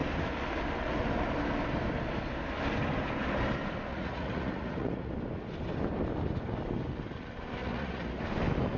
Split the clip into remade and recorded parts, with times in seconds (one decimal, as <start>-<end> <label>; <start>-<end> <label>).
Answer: 0.0-3.9 recorded; 3.9-5.1 remade; 5.1-7.6 recorded; 7.6-8.2 remade; 8.2-8.8 recorded